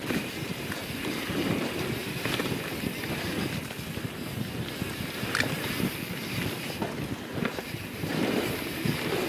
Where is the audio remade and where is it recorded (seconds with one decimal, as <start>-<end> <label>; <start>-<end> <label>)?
0.0-9.3 recorded